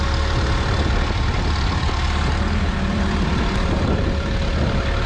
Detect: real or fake fake